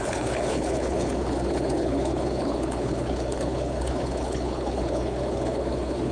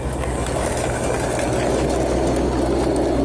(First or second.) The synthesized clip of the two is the first